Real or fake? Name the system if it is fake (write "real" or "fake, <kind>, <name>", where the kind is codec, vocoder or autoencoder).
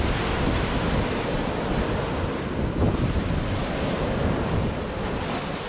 real